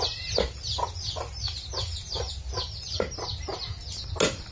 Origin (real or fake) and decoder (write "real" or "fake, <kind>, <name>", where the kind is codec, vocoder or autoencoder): real